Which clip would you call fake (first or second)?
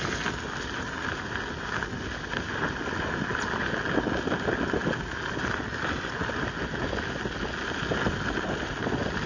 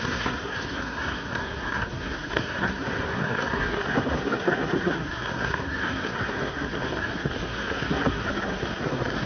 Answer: second